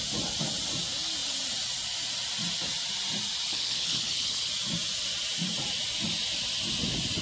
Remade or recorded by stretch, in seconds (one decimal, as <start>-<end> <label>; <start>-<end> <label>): 0.0-3.5 recorded; 3.5-4.5 remade; 4.5-7.2 recorded